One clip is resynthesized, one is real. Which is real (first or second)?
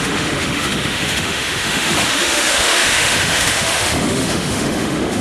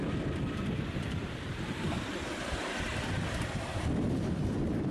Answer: second